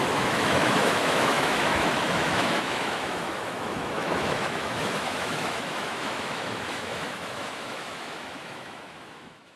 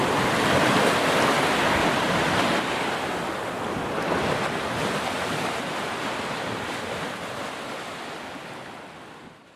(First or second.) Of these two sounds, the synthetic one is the first